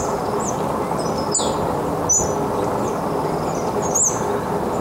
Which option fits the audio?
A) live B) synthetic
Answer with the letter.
A